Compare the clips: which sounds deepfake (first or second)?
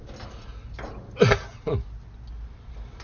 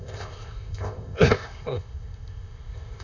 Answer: second